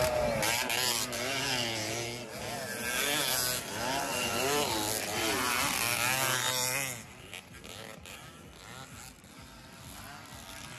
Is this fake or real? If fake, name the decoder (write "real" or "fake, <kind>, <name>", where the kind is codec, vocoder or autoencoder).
real